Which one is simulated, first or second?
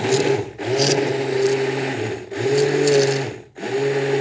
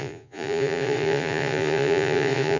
second